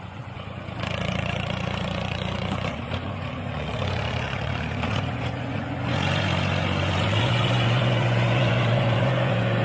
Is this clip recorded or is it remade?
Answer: remade